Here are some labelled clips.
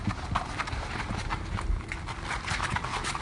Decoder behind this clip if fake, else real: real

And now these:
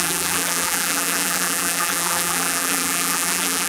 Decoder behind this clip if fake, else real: fake, vocoder, BigVGAN v2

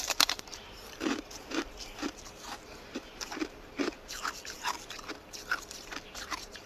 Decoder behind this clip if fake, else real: fake, vocoder, BigVGAN v2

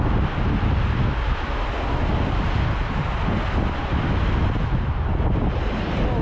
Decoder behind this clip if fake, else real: real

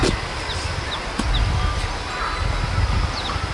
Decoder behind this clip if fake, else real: real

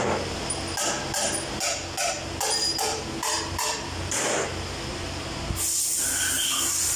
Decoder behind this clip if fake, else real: real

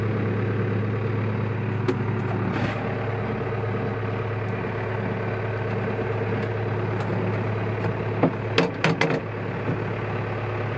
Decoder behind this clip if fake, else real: real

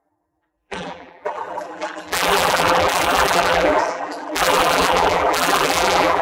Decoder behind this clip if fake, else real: fake, vocoder, BigVGAN v2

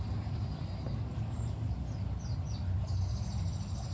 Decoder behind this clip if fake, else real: real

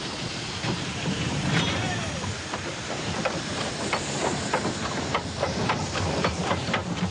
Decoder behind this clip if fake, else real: fake, vocoder, BigVGAN v2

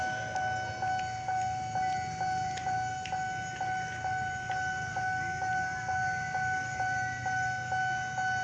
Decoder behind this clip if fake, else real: real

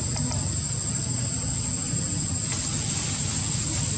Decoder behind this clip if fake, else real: real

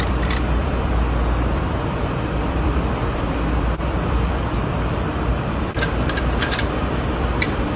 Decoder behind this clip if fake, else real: fake, vocoder, BigVGAN v2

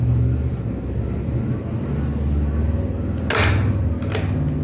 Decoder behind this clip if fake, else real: real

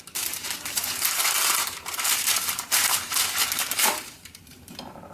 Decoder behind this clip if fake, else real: fake, vocoder, BigVGAN v2